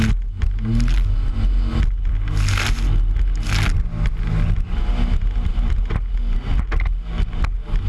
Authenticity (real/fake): real